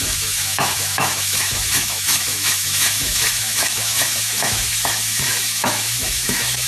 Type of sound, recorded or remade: remade